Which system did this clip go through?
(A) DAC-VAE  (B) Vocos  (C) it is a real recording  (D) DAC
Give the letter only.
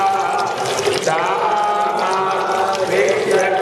C